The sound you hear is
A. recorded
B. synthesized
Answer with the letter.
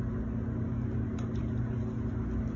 A